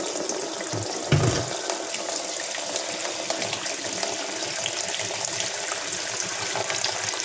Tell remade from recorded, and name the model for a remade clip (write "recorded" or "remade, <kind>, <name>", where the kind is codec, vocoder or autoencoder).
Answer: recorded